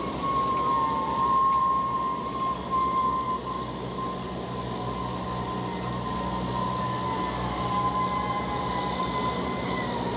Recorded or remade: recorded